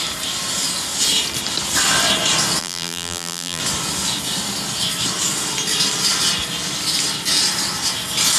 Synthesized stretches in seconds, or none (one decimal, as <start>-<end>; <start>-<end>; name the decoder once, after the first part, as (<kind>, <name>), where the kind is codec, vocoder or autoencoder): 2.6-3.6 (vocoder, BigVGAN v2)